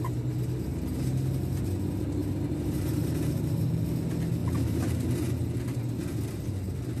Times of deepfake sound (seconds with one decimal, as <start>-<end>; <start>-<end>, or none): 2.2-3.8; 4.4-5.3